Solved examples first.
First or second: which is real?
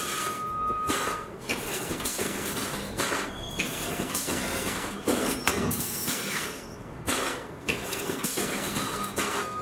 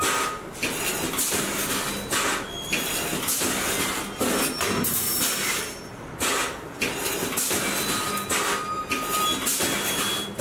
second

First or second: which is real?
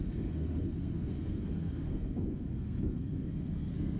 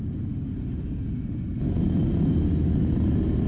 second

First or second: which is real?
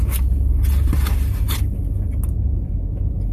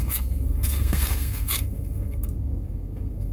first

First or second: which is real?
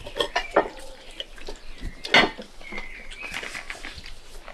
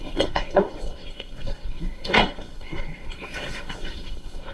first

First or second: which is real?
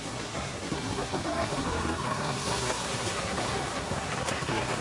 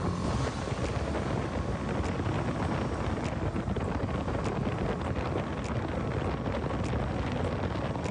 second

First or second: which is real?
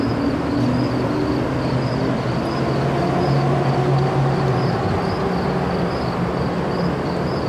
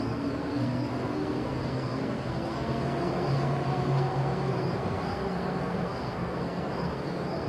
first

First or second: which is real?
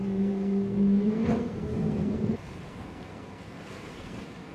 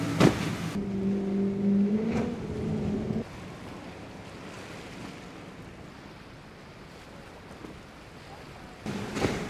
second